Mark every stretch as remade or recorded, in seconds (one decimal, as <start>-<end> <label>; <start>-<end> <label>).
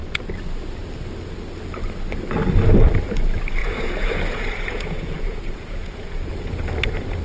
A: 0.0-3.6 recorded; 3.6-6.3 remade; 6.3-7.2 recorded